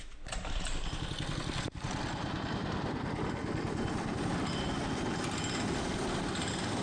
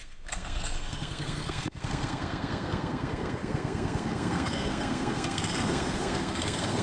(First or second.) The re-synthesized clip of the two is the second